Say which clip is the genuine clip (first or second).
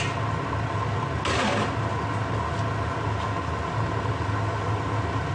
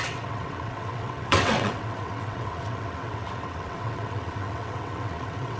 first